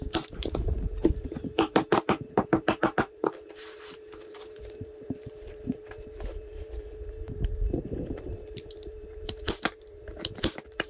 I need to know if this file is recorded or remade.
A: remade